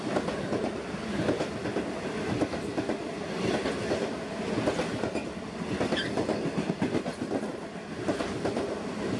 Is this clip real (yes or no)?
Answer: yes